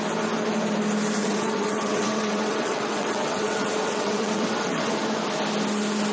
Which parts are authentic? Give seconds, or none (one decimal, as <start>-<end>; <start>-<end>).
0.0-1.2; 4.9-6.1